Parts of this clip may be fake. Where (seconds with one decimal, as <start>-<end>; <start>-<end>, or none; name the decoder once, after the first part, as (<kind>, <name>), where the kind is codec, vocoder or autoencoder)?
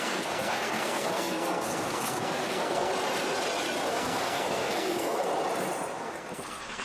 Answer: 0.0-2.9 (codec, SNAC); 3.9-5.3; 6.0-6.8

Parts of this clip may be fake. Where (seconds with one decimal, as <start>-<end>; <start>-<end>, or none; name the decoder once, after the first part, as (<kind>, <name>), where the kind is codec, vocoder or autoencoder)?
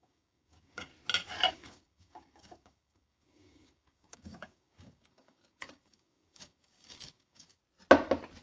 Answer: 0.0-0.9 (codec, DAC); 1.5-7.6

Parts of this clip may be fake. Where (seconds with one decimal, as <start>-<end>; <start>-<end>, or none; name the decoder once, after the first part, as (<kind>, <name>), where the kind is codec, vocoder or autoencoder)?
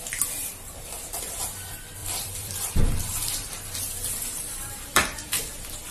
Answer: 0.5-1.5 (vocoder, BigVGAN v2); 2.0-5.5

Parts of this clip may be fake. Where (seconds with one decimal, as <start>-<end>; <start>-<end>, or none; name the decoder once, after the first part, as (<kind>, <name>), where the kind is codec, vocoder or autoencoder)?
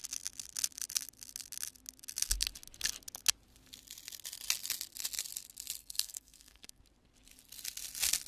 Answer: 5.8-6.8 (codec, SNAC)